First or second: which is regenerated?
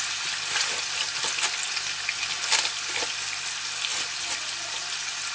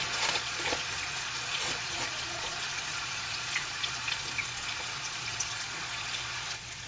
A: second